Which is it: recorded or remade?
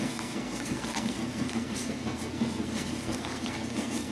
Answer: remade